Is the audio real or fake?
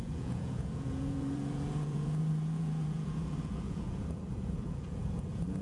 fake